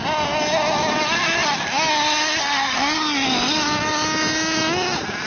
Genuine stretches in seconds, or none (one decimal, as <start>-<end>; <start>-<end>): 0.0-5.3

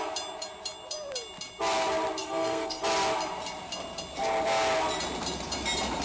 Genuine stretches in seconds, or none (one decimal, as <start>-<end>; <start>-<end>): 0.0-2.2; 2.8-6.0

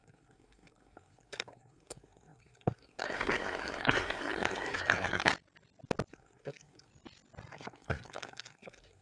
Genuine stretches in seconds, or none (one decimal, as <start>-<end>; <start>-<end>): 5.3-6.1; 6.9-7.5

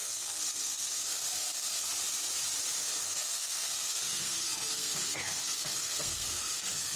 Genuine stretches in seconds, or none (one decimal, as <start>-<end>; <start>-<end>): 1.9-2.8

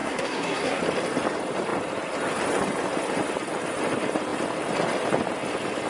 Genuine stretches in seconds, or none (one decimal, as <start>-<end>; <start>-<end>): 0.8-5.9

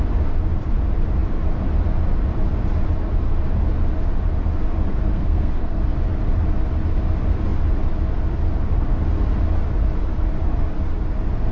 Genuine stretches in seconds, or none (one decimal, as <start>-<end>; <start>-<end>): 0.0-5.1; 5.8-11.5